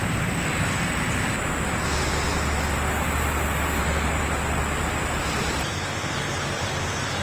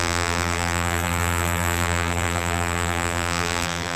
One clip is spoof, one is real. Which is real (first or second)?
first